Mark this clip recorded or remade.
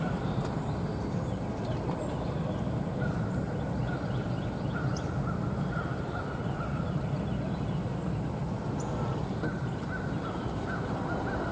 recorded